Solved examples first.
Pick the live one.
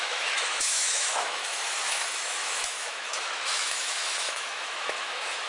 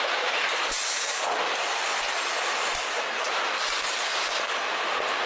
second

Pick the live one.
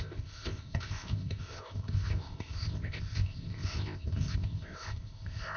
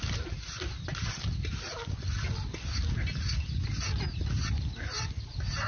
second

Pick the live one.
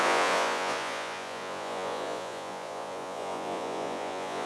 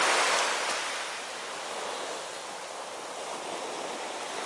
second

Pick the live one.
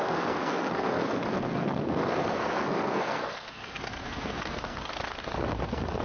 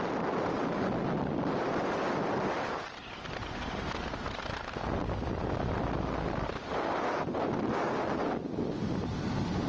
second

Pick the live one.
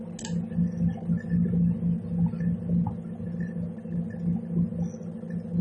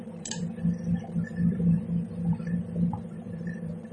first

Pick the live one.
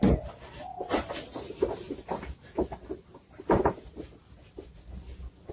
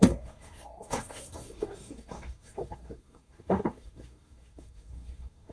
first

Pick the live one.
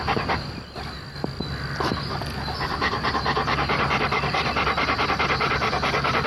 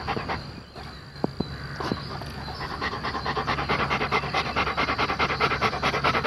second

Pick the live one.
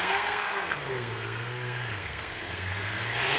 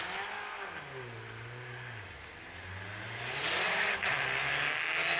second